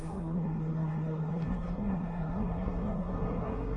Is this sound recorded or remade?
remade